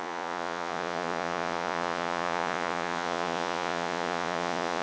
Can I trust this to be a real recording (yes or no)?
no